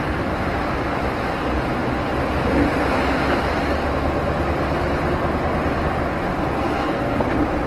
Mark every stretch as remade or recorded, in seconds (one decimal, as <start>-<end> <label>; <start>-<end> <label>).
0.0-6.6 recorded; 6.6-7.2 remade; 7.2-7.7 recorded